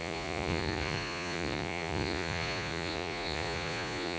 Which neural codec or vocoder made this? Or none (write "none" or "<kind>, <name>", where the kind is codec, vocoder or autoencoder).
vocoder, Vocos